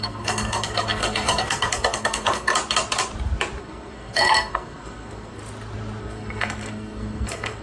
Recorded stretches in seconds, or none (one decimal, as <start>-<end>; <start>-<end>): 2.5-3.6; 5.4-6.0

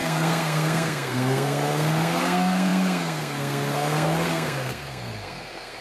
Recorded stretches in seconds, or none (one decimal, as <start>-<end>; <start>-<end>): none